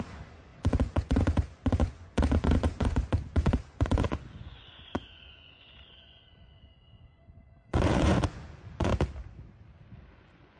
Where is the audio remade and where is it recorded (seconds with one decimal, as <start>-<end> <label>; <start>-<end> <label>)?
0.0-8.9 remade; 8.9-10.1 recorded; 10.1-10.6 remade